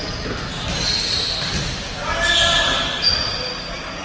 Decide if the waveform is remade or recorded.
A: recorded